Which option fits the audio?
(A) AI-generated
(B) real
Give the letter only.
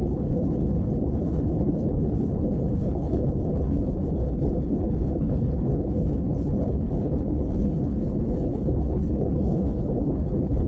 A